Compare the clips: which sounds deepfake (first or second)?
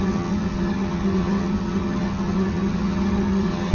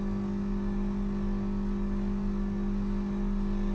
first